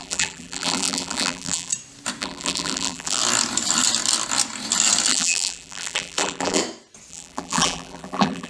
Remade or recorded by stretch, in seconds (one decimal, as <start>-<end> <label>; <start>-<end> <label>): 0.0-1.7 remade; 1.7-2.2 recorded; 2.2-3.2 remade; 3.2-5.1 recorded; 5.1-6.6 remade; 6.6-7.1 recorded; 7.1-8.5 remade